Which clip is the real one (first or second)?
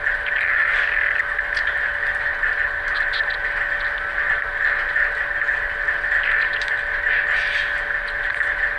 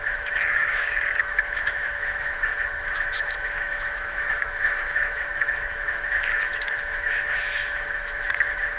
first